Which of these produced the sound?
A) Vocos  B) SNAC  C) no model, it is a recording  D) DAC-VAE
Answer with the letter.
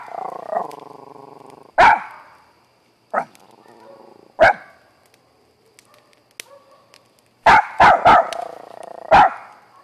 C